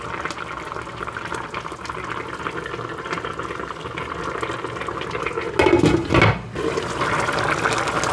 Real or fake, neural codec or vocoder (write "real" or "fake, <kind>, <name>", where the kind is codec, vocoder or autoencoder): real